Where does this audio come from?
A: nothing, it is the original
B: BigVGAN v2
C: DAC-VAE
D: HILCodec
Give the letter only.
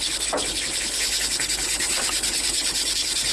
D